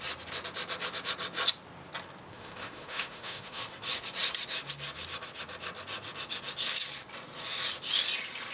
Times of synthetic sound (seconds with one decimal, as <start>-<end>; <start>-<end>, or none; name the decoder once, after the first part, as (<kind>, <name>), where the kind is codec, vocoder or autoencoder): 2.3-3.6 (autoencoder, DAC-VAE)